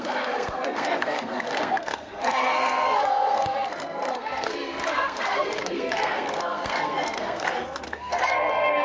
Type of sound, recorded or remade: remade